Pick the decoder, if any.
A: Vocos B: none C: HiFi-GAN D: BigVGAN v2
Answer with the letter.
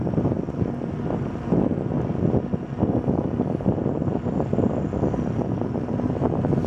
B